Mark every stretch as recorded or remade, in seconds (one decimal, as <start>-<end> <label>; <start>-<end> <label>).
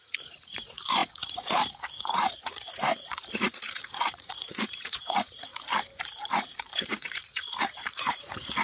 0.0-5.5 remade; 5.5-6.3 recorded; 6.3-8.6 remade